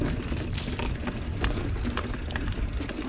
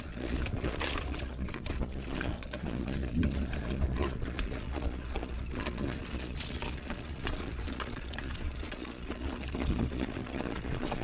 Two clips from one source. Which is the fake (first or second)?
second